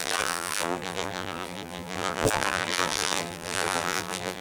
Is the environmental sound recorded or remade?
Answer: remade